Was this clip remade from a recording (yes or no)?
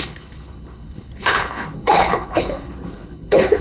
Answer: yes